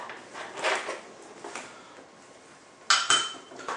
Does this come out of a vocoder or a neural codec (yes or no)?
no